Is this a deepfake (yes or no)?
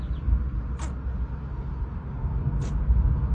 no